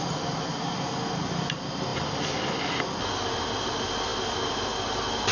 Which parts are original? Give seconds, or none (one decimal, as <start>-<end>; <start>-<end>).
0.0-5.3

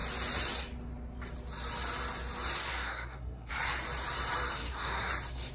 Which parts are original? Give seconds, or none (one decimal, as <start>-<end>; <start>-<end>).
0.0-2.7; 3.5-4.6; 5.1-5.5

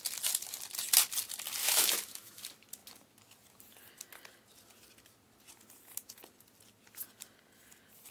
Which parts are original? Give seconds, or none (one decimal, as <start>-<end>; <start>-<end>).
0.0-1.6; 2.4-8.1

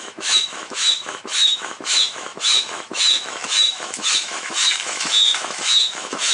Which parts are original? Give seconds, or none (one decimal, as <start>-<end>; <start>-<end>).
none

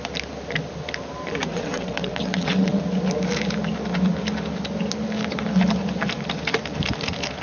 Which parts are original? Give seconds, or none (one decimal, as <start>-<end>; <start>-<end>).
0.0-1.5; 2.8-7.4

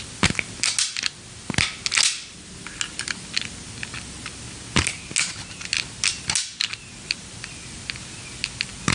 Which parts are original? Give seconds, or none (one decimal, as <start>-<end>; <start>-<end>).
0.0-8.9

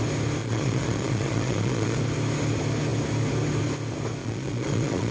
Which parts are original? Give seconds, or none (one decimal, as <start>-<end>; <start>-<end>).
0.0-0.4; 2.0-4.2

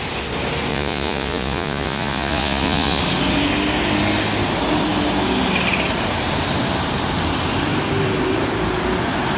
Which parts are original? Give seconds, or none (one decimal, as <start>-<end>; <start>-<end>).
0.0-0.7; 3.0-9.4